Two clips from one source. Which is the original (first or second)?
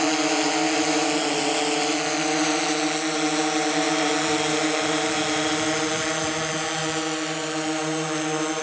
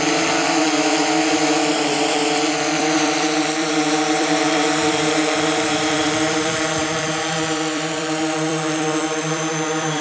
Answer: first